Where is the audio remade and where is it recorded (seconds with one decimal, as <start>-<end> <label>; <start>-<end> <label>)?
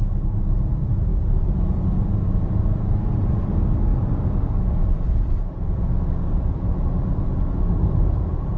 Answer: 0.0-1.1 recorded; 1.1-3.5 remade; 3.5-8.6 recorded